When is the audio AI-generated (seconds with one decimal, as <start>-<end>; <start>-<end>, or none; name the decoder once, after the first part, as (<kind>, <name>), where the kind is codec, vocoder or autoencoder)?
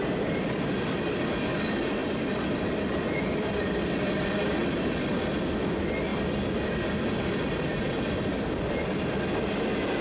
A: 2.0-4.1 (vocoder, BigVGAN v2); 4.6-5.4